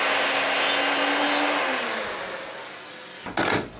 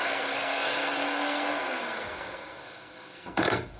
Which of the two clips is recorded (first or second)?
first